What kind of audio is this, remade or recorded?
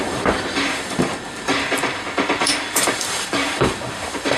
remade